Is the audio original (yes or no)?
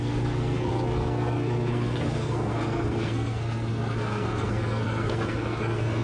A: no